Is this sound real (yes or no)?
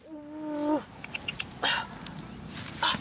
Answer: yes